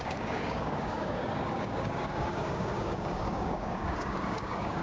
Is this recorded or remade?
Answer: remade